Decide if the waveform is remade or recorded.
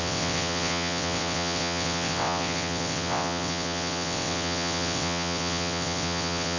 remade